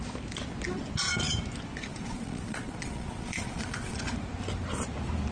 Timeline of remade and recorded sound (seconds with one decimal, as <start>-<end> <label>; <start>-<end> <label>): 0.0-1.9 recorded; 1.9-4.0 remade; 4.0-5.3 recorded